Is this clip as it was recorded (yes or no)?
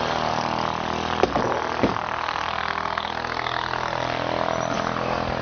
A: yes